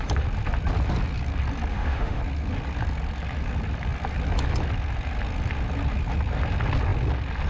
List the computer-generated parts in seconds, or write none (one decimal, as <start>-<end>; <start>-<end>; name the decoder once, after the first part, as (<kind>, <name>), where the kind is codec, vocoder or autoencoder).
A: 1.7-2.2 (autoencoder, DAC-VAE)

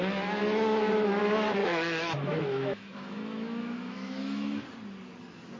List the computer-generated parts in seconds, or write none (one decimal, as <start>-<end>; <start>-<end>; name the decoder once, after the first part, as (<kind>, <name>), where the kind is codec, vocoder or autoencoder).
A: 0.4-1.2 (autoencoder, DAC-VAE); 1.6-4.6

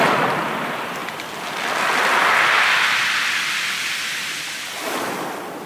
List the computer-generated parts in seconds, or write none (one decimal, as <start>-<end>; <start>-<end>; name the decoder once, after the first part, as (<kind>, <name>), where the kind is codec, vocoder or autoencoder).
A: none

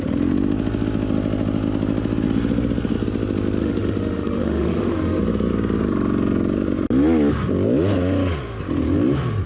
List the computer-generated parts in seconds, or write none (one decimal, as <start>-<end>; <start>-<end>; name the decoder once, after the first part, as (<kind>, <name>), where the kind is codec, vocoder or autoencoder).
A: 3.6-5.2 (autoencoder, DAC-VAE)